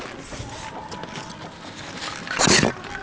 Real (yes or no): yes